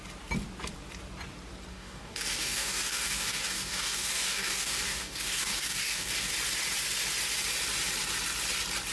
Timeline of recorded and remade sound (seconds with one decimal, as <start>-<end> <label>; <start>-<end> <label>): 0.0-1.7 recorded; 1.7-6.3 remade; 6.3-8.9 recorded